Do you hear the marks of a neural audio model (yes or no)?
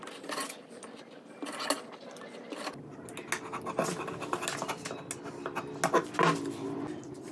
no